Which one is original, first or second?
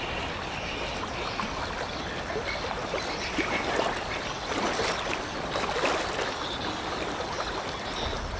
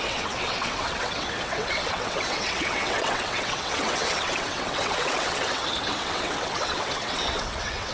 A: first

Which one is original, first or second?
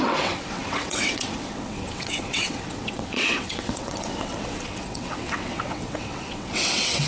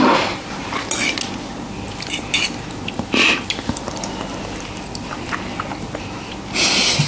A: second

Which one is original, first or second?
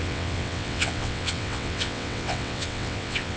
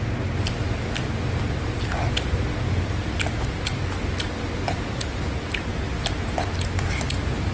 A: second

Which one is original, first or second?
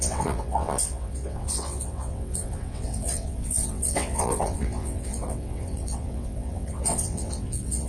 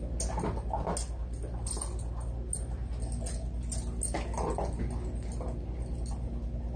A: second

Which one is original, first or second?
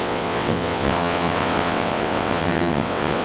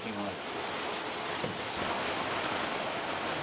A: second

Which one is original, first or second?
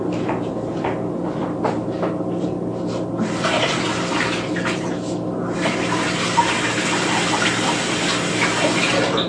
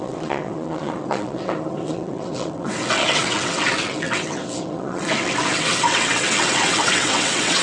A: first